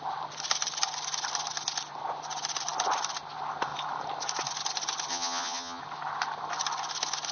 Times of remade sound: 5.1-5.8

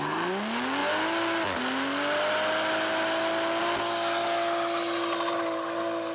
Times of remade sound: none

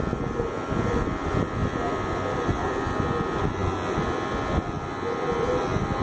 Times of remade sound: none

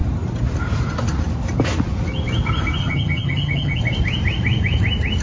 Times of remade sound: 2.8-3.8

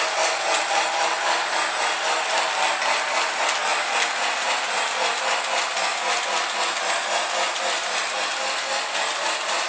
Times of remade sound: none

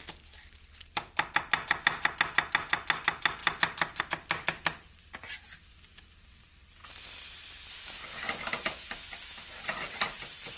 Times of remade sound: none

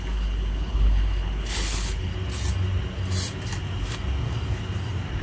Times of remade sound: 0.0-2.1